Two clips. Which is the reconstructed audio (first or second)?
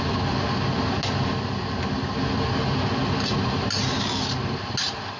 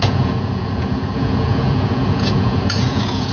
second